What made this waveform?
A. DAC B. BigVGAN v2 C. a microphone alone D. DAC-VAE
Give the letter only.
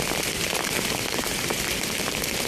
C